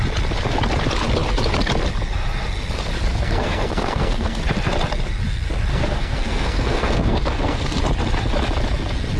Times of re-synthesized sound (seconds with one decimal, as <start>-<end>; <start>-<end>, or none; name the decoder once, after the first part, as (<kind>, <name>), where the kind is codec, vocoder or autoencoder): 3.1-4.4 (codec, SNAC); 5.7-7.8